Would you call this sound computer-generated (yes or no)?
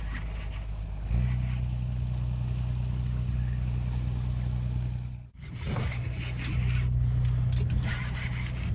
no